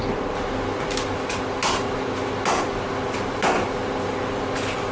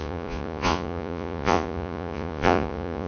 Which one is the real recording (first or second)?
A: first